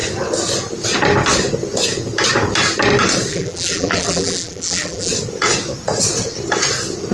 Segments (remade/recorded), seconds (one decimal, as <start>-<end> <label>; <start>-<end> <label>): 0.0-3.3 recorded; 3.3-5.1 remade; 5.1-7.1 recorded